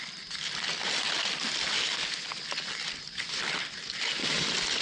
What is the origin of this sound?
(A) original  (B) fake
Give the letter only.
A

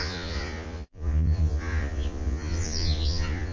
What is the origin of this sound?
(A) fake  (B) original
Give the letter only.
A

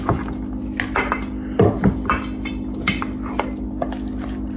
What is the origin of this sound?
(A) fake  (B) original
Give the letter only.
B